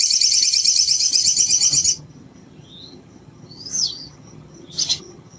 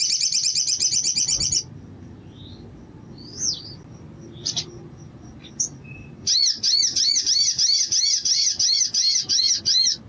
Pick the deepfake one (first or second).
first